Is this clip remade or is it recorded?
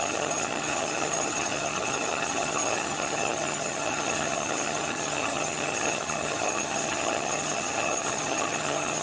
remade